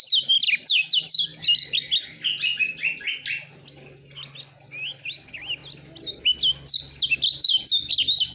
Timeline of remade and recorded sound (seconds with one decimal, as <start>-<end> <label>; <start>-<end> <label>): 0.0-8.3 recorded